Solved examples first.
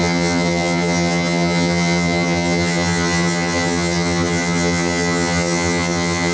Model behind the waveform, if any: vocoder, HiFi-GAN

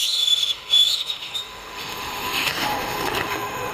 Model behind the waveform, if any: autoencoder, DAC-VAE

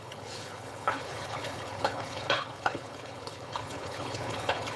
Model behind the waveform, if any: codec, HILCodec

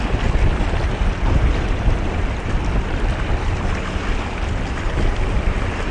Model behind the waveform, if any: none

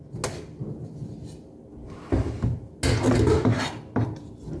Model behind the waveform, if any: none